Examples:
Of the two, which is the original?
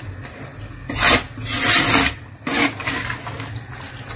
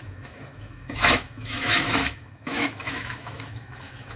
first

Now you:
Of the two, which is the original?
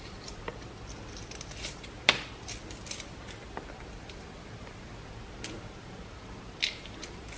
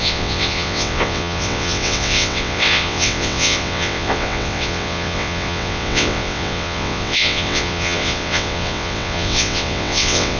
first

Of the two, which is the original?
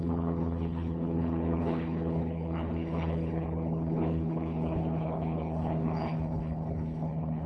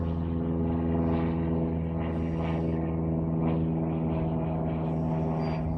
second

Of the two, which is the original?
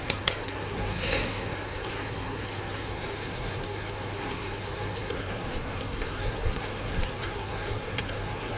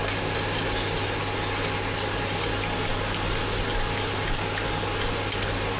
second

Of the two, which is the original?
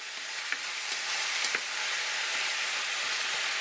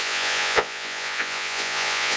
first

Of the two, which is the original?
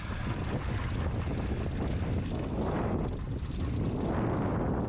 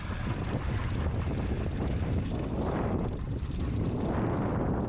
first